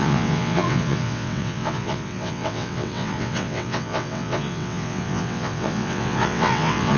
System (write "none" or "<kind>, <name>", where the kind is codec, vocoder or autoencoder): vocoder, WaveNeXt